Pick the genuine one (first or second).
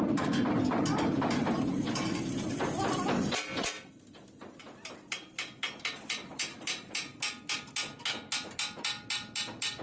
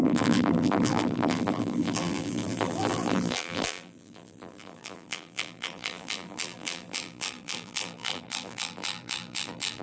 first